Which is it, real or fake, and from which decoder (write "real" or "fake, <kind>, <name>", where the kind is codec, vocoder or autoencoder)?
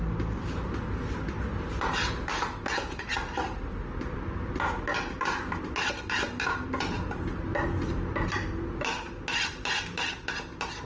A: real